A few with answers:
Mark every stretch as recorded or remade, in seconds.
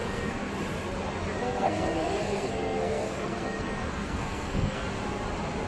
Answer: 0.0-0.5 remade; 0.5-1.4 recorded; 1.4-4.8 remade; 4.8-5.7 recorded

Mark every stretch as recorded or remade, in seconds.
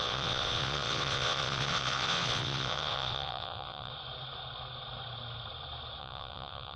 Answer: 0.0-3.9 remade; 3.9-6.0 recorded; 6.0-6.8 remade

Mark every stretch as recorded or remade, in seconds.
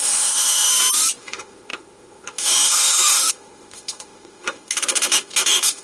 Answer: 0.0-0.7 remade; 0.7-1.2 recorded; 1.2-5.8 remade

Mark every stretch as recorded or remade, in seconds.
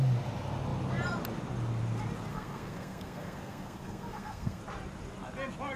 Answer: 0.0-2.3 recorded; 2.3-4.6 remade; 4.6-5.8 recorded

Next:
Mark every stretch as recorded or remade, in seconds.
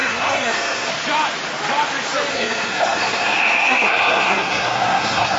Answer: 0.0-0.9 remade; 0.9-2.3 recorded; 2.3-5.4 remade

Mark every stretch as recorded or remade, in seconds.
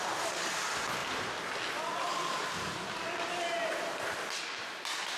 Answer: 0.0-5.2 recorded